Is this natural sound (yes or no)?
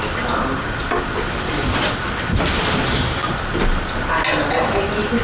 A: yes